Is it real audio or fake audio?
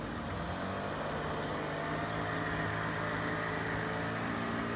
real